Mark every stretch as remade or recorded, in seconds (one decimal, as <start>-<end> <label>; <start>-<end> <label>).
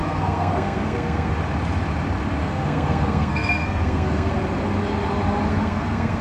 0.0-1.3 remade; 1.3-2.4 recorded; 2.4-4.3 remade; 4.3-5.5 recorded; 5.5-6.2 remade